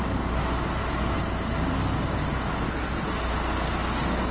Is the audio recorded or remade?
recorded